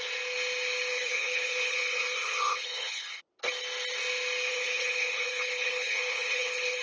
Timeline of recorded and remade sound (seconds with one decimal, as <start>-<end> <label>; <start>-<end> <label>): 0.0-0.9 recorded; 0.9-3.2 remade; 3.2-4.5 recorded; 4.5-6.8 remade

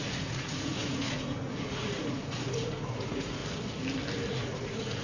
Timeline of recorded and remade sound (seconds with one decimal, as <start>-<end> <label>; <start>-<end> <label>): 0.0-3.4 remade; 3.4-4.3 recorded; 4.3-5.0 remade